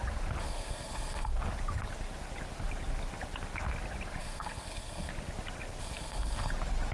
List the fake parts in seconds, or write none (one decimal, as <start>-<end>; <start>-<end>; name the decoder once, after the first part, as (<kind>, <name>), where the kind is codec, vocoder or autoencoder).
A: 0.4-1.3 (codec, SNAC); 4.2-5.1; 5.8-6.5